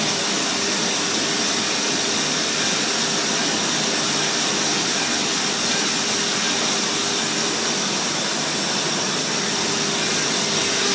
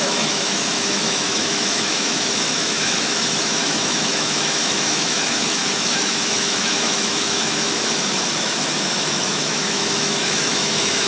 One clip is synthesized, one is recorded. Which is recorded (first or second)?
first